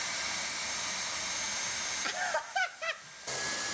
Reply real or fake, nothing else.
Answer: real